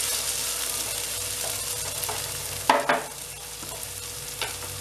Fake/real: real